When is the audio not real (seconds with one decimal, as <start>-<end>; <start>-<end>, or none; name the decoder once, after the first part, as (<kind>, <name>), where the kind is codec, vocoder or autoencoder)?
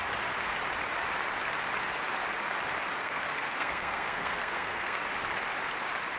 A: 3.0-5.0 (codec, SNAC)